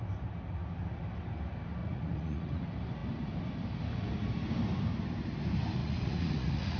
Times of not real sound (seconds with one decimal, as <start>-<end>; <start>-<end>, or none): 1.8-2.6; 5.8-6.8